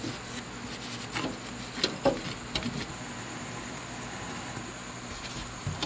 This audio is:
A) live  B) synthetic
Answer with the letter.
A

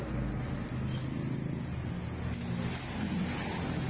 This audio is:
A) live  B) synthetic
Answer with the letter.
A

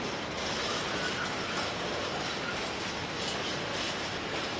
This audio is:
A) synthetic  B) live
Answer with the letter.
B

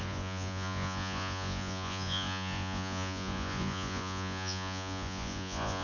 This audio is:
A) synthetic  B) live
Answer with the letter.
A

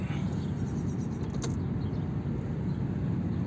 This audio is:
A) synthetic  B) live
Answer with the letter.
B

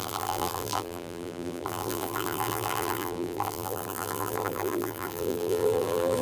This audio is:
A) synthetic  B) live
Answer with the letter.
A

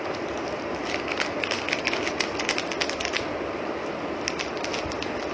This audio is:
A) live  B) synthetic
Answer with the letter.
A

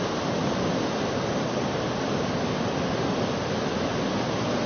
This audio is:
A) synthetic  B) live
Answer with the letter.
B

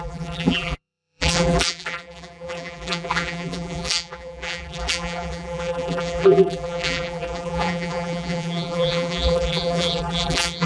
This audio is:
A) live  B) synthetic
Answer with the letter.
B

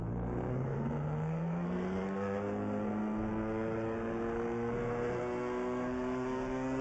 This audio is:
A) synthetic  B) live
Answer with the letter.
A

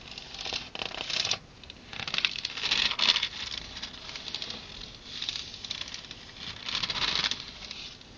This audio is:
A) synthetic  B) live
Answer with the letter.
B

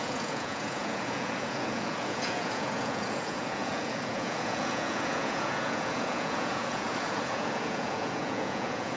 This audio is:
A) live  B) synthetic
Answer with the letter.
B